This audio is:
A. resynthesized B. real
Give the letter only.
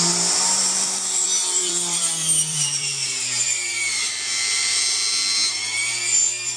A